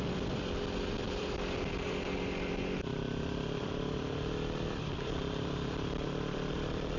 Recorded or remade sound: remade